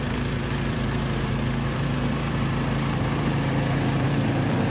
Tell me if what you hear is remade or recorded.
remade